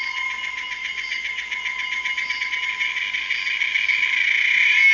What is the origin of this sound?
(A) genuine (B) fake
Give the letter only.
A